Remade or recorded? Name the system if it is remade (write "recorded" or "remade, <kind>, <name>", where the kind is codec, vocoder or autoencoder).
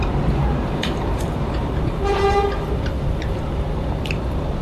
remade, vocoder, BigVGAN v2